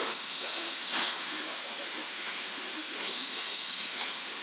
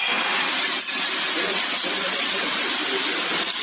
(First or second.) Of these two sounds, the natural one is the second